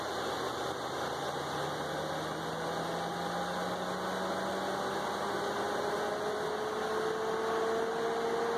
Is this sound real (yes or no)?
yes